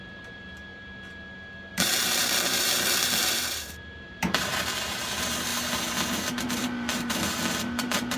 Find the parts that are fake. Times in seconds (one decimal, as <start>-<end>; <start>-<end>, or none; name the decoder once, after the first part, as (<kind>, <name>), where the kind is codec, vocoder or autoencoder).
0.0-0.7 (vocoder, BigVGAN v2); 1.7-8.2